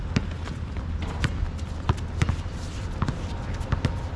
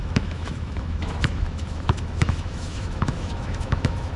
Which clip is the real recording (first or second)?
first